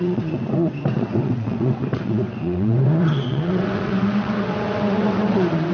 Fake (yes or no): yes